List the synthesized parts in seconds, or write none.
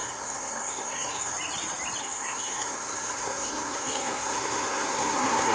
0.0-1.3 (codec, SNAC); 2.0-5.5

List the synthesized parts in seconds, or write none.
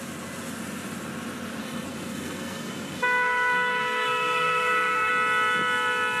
1.6-5.1 (codec, SNAC)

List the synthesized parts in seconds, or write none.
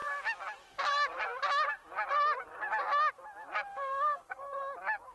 3.7-4.4 (codec, SNAC)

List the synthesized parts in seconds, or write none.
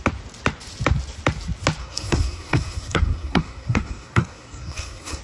1.8-5.2 (codec, SNAC)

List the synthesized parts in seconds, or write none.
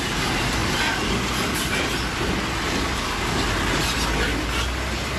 none